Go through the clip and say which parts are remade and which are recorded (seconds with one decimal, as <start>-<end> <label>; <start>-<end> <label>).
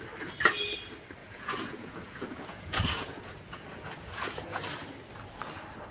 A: 0.0-1.2 recorded; 1.2-4.7 remade; 4.7-5.9 recorded